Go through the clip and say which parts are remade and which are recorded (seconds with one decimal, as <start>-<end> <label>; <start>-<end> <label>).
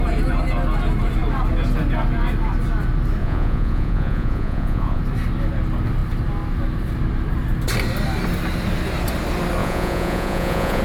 0.0-3.2 recorded; 3.2-5.0 remade; 5.0-9.6 recorded; 9.6-10.8 remade